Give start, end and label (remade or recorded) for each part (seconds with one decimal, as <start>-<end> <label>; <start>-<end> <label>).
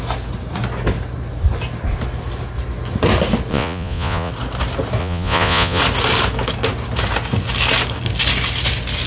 0.0-3.5 recorded; 3.5-4.3 remade; 4.3-5.0 recorded; 5.0-5.8 remade; 5.8-9.1 recorded